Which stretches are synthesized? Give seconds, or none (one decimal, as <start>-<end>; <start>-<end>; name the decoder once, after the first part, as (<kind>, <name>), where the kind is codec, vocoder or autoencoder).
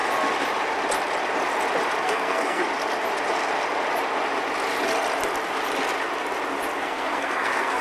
2.0-2.6 (codec, SNAC); 6.8-7.8